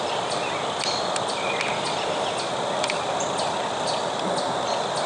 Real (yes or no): yes